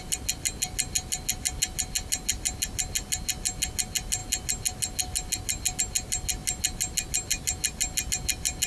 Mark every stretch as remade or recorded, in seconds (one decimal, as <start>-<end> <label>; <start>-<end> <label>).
0.0-8.7 recorded